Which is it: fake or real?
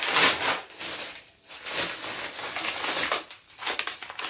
real